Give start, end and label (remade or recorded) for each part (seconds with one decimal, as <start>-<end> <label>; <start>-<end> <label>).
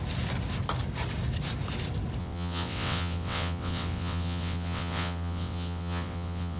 0.0-2.2 recorded; 2.2-6.6 remade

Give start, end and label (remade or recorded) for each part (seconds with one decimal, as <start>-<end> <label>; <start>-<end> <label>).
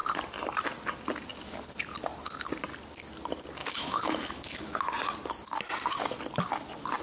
0.0-3.6 recorded; 3.6-4.8 remade; 4.8-7.0 recorded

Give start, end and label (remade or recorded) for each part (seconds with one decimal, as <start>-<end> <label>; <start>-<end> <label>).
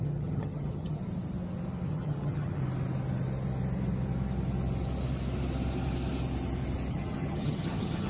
0.0-1.0 remade; 1.0-1.9 recorded; 1.9-2.6 remade; 2.6-6.9 recorded; 6.9-8.1 remade